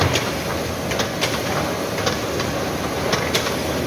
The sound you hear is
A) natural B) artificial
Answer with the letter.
A